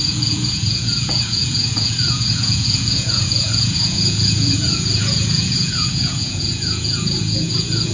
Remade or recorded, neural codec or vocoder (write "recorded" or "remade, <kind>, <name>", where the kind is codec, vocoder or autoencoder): remade, vocoder, Vocos